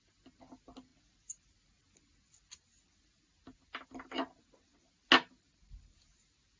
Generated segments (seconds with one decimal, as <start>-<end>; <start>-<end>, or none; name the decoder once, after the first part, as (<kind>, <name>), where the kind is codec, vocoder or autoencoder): none